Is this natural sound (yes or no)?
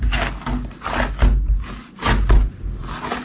yes